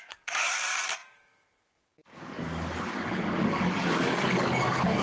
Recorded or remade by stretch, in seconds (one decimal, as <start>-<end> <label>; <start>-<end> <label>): 0.0-5.0 remade